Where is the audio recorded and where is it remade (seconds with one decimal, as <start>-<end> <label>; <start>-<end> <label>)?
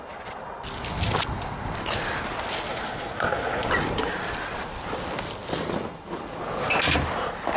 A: 0.0-2.7 recorded; 2.7-3.7 remade; 3.7-7.6 recorded